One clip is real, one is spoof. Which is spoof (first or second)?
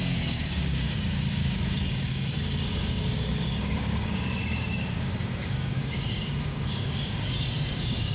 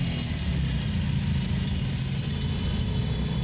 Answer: first